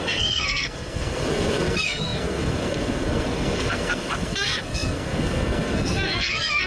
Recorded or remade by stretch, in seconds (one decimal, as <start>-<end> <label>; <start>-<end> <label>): 0.0-6.7 remade